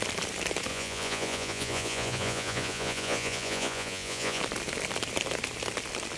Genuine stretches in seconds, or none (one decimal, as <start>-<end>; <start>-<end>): 0.0-0.7; 4.4-6.2